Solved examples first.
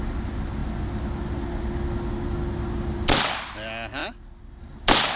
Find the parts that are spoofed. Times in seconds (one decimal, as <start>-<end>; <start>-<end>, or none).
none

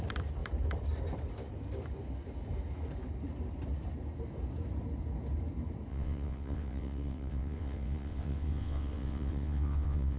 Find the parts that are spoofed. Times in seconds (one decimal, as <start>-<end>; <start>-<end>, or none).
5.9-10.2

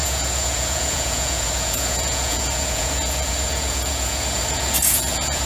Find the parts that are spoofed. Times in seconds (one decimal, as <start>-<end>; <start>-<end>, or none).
0.0-5.5

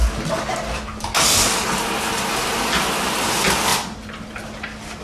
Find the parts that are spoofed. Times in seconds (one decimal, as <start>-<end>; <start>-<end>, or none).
none